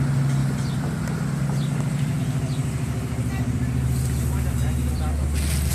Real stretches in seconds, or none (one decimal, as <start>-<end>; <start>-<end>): 0.0-0.4; 2.2-2.6